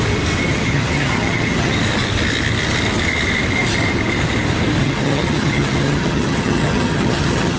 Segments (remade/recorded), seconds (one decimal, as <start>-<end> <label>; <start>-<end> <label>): 0.0-0.5 recorded; 0.5-1.8 remade; 1.8-4.8 recorded; 4.8-7.6 remade